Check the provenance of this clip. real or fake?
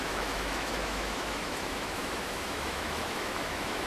fake